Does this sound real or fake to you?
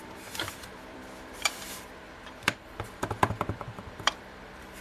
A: fake